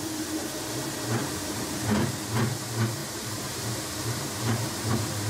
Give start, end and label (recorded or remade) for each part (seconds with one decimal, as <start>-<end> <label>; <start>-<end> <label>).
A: 0.0-1.2 recorded; 1.2-2.0 remade; 2.0-3.0 recorded; 3.0-5.3 remade